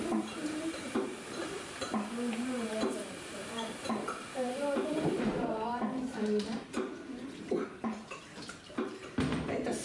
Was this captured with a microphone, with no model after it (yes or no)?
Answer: no